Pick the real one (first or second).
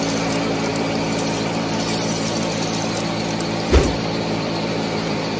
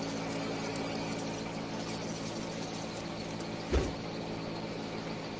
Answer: second